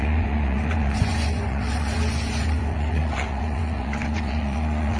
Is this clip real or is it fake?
fake